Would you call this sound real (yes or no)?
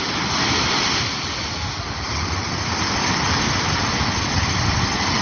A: yes